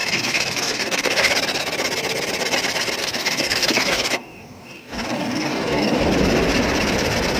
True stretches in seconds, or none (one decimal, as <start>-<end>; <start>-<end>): 1.3-3.0; 6.0-7.4